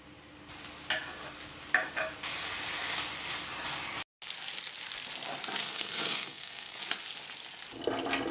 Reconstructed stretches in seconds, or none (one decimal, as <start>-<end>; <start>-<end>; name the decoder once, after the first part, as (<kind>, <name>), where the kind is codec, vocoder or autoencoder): 5.6-6.8 (codec, SNAC)